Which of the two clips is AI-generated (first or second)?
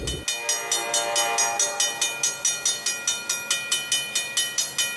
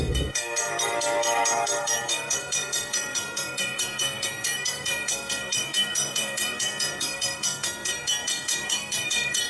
second